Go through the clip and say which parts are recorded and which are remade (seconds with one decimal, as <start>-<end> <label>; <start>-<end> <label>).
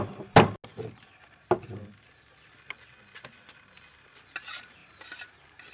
0.0-4.8 recorded; 4.8-5.7 remade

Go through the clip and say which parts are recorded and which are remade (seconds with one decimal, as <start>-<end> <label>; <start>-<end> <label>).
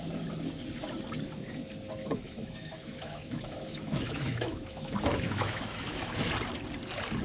0.0-2.0 recorded; 2.0-6.3 remade; 6.3-7.2 recorded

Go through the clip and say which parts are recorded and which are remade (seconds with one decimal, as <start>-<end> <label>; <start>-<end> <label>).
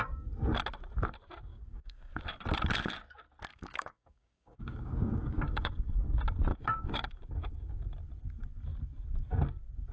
0.0-1.5 recorded; 1.5-2.2 remade; 2.2-3.5 recorded; 3.5-5.7 remade; 5.7-6.5 recorded; 6.5-7.9 remade; 7.9-9.9 recorded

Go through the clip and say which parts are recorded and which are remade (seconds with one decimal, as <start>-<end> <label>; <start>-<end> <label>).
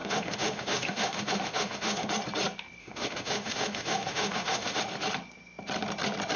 0.0-2.1 remade; 2.1-2.8 recorded; 2.8-4.8 remade; 4.8-6.4 recorded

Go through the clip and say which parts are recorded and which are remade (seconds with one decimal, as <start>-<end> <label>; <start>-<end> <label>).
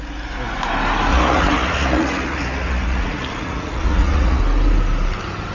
0.0-1.1 recorded; 1.1-4.4 remade; 4.4-5.5 recorded